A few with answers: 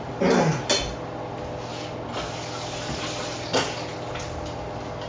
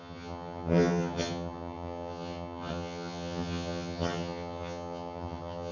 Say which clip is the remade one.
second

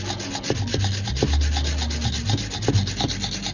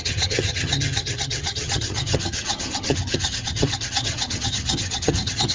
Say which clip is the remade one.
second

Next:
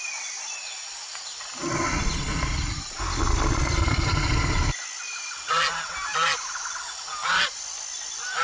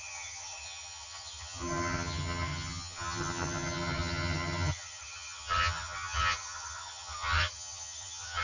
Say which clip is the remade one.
second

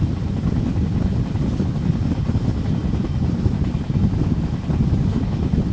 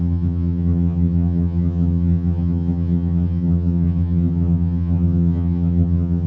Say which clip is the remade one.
second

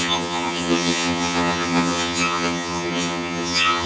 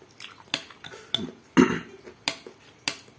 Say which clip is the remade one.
first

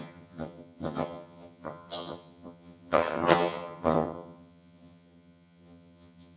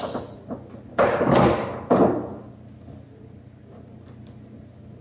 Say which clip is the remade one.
first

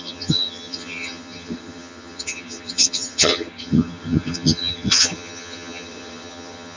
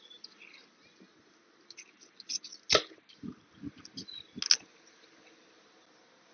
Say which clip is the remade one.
first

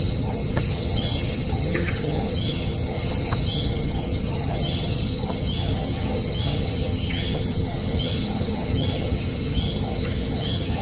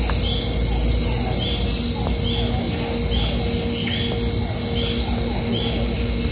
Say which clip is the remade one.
first